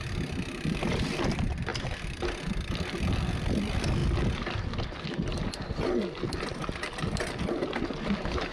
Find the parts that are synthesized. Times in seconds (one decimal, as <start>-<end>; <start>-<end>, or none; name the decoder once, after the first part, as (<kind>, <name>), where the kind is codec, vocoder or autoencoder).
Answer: none